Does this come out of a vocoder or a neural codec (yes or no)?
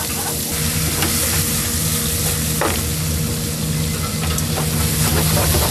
no